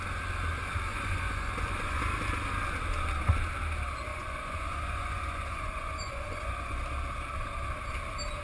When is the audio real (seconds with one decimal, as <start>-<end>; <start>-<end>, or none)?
0.0-0.9; 2.0-4.1; 6.8-8.4